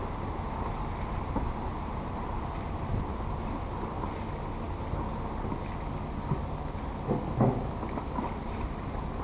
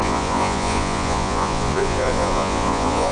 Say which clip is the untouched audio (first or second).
first